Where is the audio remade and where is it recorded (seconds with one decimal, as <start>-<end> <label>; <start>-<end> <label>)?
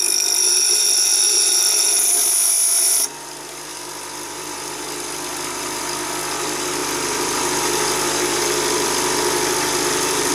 0.0-3.7 recorded; 3.7-4.7 remade; 4.7-6.8 recorded; 6.8-10.3 remade